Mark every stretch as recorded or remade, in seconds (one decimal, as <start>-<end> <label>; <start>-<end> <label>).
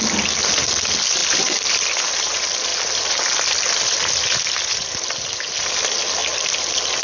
0.0-7.0 recorded